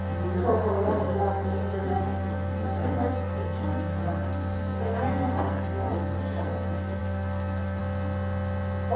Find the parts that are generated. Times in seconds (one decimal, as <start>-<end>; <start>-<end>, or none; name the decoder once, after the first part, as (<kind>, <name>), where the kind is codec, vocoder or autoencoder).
0.0-7.8 (codec, SNAC)